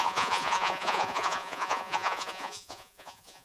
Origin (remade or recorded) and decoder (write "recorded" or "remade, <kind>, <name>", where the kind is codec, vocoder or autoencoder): remade, vocoder, Vocos